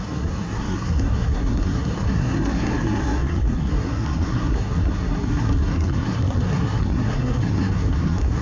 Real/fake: fake